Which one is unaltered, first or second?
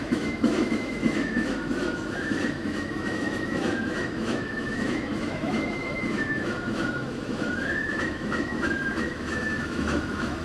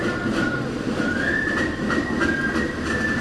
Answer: second